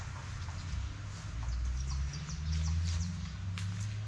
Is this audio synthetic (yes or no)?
no